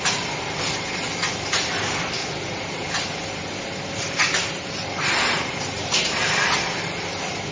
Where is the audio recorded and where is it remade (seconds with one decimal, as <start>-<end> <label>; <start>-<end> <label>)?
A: 0.0-7.5 recorded